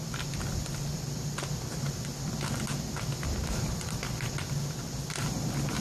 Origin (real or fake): real